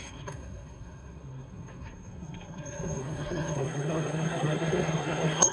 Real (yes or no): no